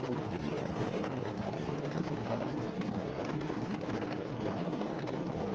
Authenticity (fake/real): fake